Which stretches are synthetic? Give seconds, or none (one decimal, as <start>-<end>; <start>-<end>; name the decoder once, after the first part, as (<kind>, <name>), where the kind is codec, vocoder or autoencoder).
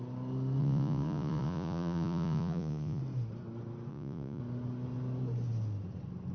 0.6-3.0 (vocoder, Vocos); 3.9-4.4